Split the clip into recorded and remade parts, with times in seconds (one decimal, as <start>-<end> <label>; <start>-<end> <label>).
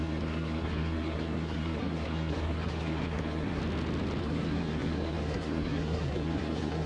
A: 0.0-3.6 remade; 3.6-4.2 recorded; 4.2-6.9 remade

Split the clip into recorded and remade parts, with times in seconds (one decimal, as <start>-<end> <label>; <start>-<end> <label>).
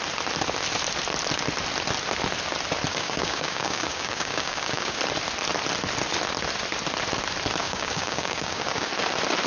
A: 0.0-2.9 recorded; 2.9-5.0 remade; 5.0-7.6 recorded; 7.6-8.9 remade; 8.9-9.5 recorded